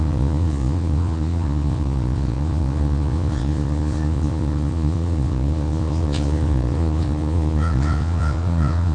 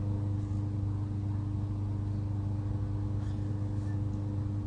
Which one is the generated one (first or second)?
first